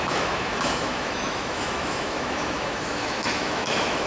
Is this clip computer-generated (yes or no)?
yes